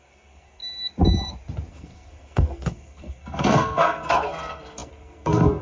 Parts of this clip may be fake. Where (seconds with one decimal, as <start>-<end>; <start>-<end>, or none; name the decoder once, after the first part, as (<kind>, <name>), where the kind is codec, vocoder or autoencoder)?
0.0-0.6 (codec, SNAC); 1.7-5.6

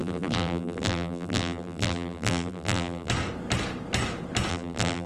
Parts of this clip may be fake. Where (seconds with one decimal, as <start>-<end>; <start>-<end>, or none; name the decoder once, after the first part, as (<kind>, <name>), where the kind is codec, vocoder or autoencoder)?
0.0-3.1 (vocoder, BigVGAN v2); 4.5-5.1

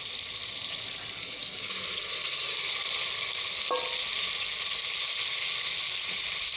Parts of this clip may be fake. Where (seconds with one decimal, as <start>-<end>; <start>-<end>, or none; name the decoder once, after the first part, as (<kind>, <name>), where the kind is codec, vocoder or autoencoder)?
none

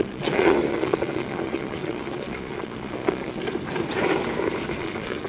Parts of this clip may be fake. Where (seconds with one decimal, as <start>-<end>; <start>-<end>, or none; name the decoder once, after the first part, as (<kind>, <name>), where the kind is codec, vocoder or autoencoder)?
0.0-3.4 (vocoder, Vocos); 4.8-5.3

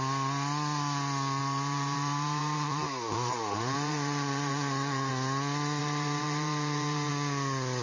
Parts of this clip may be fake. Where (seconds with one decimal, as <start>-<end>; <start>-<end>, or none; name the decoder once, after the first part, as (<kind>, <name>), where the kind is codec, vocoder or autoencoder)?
1.4-5.1 (vocoder, BigVGAN v2); 5.8-7.1